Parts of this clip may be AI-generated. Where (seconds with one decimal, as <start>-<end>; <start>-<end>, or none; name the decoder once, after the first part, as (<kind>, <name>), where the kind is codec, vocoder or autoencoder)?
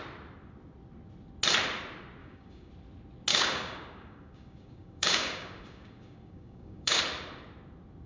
2.2-2.7 (codec, DAC); 3.3-7.0